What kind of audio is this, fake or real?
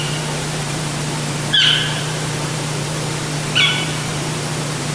fake